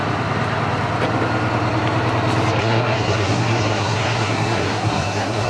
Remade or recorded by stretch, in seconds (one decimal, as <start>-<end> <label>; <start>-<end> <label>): 0.0-2.6 recorded; 2.6-5.5 remade